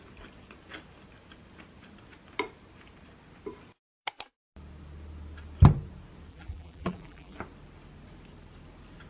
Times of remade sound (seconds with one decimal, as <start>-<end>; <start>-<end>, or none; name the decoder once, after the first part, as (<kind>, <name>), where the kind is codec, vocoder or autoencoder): 6.3-7.4 (vocoder, BigVGAN v2)